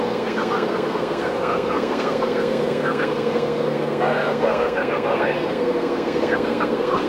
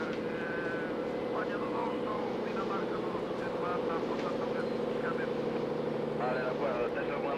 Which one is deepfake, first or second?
first